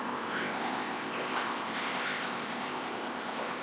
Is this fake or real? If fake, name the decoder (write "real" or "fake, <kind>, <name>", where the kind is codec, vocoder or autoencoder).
fake, codec, ZipCodec